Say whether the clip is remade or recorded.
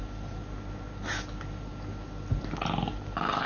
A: recorded